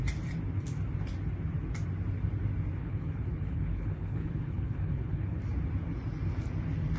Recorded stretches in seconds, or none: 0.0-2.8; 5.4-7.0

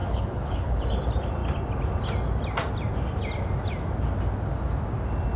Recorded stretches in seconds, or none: 0.8-5.4

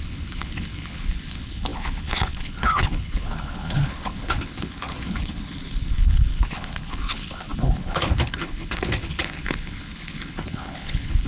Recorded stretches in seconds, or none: none

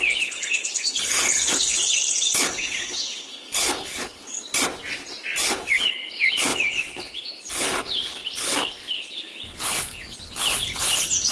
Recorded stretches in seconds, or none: 4.5-5.4

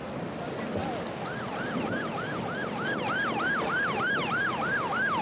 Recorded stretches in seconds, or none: 0.0-5.2

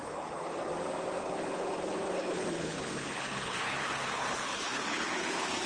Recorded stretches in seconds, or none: 0.7-1.2

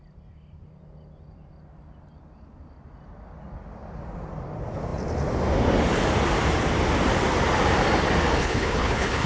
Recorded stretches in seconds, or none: 0.0-8.4

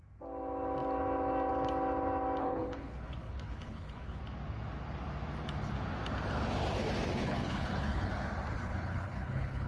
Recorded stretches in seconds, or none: 0.0-2.4; 4.2-7.2; 8.1-8.5